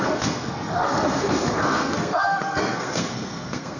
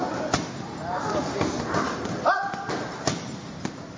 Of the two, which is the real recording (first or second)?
second